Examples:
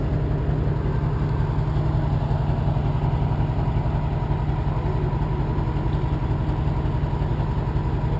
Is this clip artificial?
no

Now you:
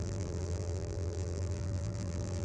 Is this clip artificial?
yes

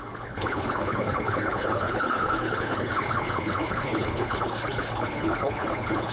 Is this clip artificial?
yes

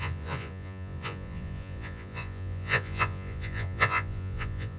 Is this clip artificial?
yes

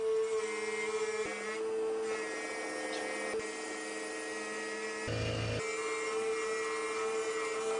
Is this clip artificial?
no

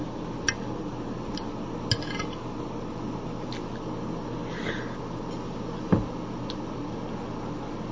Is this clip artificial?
no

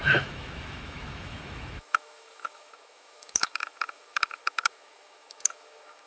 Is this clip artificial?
yes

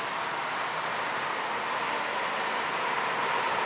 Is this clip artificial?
no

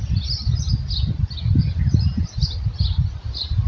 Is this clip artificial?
no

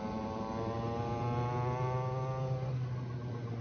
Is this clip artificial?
no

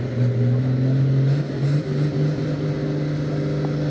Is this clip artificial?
no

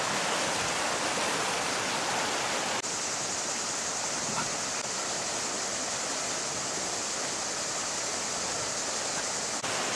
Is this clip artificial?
no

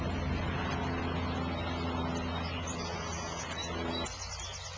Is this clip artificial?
no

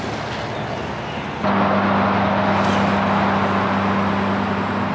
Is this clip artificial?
no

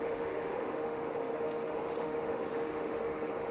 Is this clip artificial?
yes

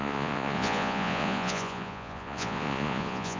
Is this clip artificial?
yes